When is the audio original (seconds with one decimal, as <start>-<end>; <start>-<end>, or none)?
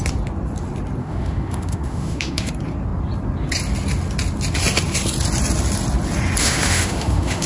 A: 0.0-1.0; 2.5-6.4